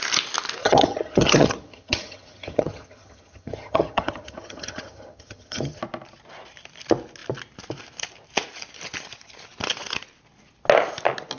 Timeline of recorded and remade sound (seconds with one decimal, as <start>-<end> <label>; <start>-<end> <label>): 0.0-0.6 recorded; 0.6-5.8 remade; 5.8-11.4 recorded